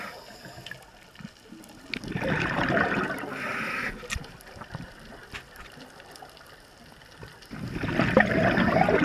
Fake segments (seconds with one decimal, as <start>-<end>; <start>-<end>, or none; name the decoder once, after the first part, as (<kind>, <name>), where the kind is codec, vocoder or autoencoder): 3.5-6.2 (vocoder, BigVGAN v2)